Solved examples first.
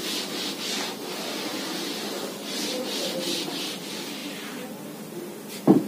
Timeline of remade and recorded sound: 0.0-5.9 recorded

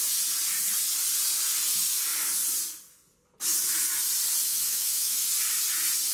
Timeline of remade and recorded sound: 0.0-4.5 recorded; 4.5-5.2 remade; 5.2-6.1 recorded

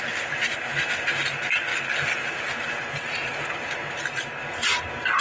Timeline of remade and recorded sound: 0.0-5.2 recorded

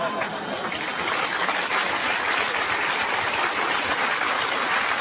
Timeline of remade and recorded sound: 0.0-5.0 recorded